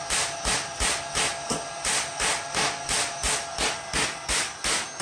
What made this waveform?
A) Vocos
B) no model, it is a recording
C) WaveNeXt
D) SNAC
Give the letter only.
B